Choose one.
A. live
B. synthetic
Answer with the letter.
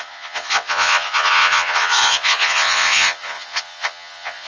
B